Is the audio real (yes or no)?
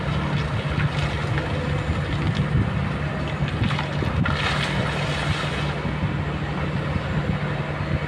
yes